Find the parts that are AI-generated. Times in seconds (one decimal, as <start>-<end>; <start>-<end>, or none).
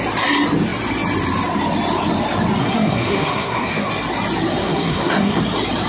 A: 2.6-3.9; 4.6-5.4